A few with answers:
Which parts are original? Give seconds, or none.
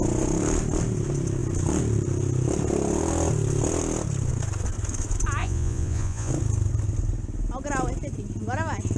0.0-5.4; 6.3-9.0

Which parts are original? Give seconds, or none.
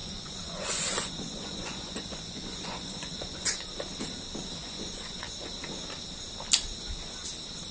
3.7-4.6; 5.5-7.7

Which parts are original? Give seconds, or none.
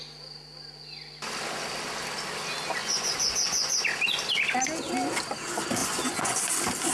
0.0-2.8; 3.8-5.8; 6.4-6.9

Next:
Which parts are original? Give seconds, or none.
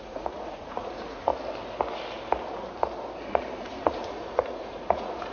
1.3-3.3